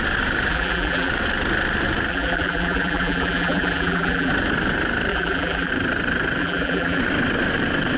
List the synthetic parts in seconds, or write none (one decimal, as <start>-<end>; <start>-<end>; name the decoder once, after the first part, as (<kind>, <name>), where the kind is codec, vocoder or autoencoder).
0.5-1.1 (vocoder, BigVGAN v2); 2.1-4.3; 5.1-5.7; 6.4-7.0